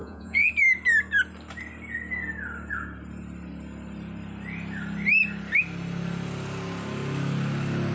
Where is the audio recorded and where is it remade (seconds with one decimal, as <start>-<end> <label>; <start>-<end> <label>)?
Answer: 0.0-0.5 remade; 0.5-7.9 recorded